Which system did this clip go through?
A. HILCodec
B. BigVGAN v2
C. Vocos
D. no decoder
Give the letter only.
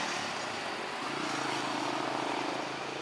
D